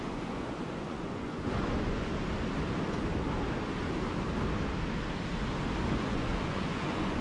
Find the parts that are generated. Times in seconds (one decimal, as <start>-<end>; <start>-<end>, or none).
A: 0.0-2.1; 5.9-7.2